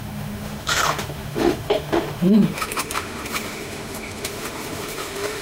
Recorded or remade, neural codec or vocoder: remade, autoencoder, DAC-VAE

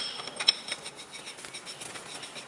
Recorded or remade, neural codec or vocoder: recorded